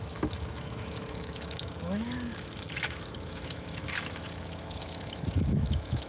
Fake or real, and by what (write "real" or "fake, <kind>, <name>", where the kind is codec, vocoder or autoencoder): fake, autoencoder, DAC-VAE